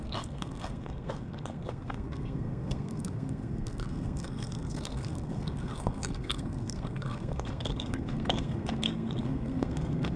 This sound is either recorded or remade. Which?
remade